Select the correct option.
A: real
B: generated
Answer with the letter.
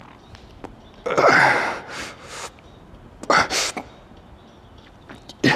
A